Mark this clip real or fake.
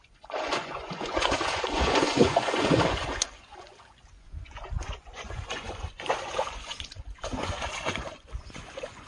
fake